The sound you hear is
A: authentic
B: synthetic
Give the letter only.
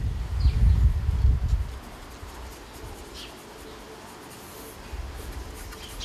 A